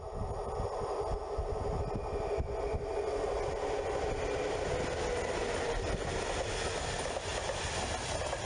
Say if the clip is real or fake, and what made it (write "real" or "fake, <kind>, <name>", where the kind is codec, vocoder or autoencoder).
real